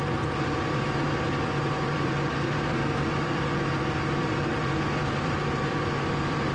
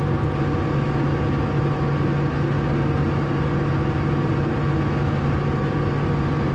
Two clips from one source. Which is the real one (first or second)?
second